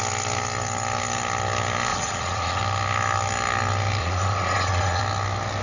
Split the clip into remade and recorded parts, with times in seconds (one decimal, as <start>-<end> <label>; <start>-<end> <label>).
0.0-1.9 recorded; 1.9-2.6 remade; 2.6-4.0 recorded; 4.0-5.0 remade; 5.0-5.6 recorded